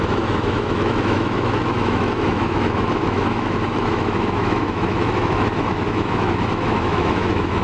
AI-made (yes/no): yes